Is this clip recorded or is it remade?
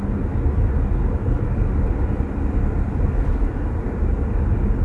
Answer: recorded